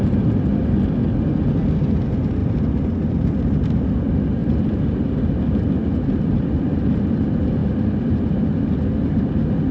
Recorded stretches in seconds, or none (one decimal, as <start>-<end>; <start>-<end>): 0.0-4.4; 6.8-9.7